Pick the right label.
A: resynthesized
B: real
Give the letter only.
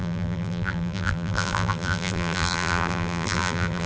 A